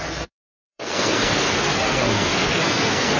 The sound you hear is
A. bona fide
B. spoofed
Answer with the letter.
B